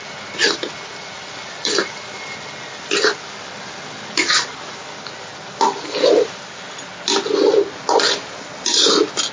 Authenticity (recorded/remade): recorded